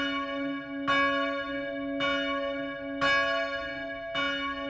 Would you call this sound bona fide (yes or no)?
yes